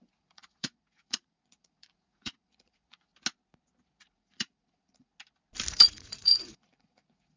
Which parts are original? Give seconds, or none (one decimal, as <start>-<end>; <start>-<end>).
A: 3.1-4.0; 5.1-5.7